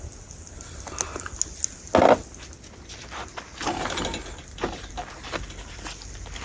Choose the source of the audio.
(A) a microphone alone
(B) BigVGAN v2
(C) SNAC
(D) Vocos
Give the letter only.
A